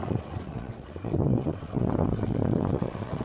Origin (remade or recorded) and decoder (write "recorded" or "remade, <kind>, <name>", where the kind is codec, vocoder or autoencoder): remade, vocoder, WaveNeXt